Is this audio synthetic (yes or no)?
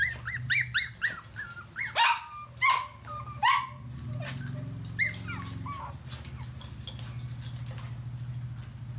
no